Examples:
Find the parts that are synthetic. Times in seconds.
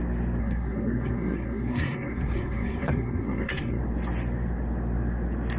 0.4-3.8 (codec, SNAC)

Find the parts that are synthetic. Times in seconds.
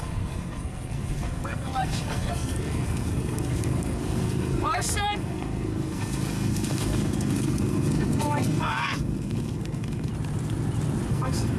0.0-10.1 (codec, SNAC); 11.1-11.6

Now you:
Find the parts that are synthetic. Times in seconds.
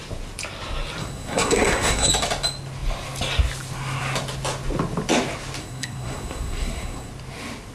1.0-2.1 (codec, SNAC); 5.6-7.1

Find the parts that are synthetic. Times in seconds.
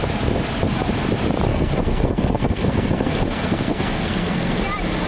1.5-4.6 (codec, SNAC)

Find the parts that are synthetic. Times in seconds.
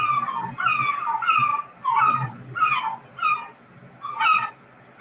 none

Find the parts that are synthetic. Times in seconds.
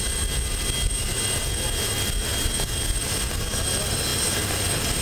none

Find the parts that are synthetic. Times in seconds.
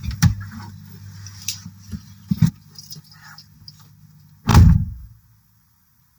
none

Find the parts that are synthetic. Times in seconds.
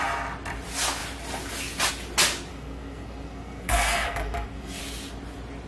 2.5-4.8 (codec, SNAC)